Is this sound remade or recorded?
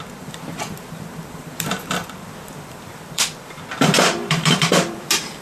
remade